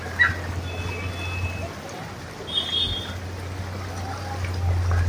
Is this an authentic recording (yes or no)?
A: yes